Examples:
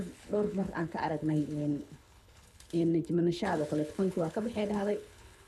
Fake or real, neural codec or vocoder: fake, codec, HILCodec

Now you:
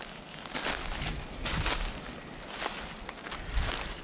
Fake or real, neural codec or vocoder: real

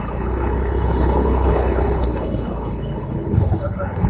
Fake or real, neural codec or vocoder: fake, codec, HILCodec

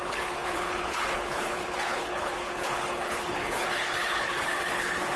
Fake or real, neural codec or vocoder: fake, codec, HILCodec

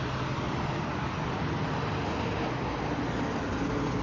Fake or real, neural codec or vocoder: real